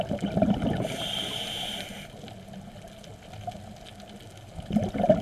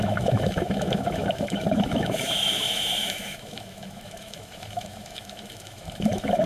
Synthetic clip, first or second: second